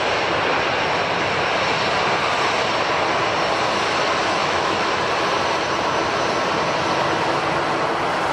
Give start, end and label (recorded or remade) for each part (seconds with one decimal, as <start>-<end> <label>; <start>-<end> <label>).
0.0-4.4 recorded; 4.4-4.9 remade; 4.9-8.3 recorded